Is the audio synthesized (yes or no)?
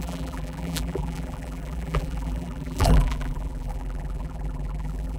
yes